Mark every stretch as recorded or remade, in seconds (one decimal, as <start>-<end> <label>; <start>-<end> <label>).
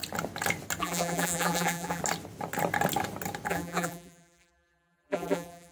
0.0-0.8 recorded; 0.8-2.0 remade; 2.0-3.5 recorded; 3.5-5.7 remade